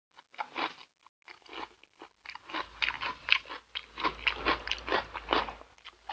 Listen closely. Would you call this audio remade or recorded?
recorded